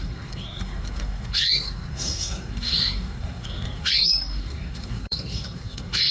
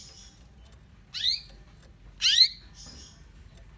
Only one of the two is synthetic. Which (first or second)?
first